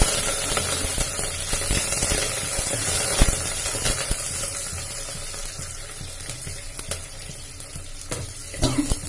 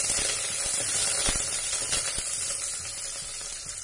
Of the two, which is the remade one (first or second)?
second